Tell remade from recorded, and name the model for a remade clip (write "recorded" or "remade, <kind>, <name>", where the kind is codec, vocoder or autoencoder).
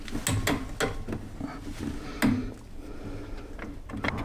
recorded